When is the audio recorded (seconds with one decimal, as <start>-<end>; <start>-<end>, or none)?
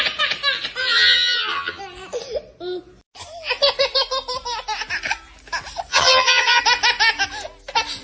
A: 0.0-0.8; 1.8-5.9; 6.6-8.0